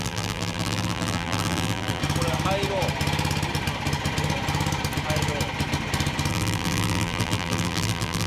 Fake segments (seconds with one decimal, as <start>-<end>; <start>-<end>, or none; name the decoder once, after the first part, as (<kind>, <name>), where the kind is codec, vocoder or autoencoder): 0.0-2.0 (vocoder, BigVGAN v2); 6.3-8.3